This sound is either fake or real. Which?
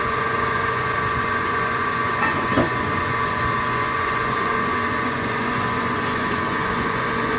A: fake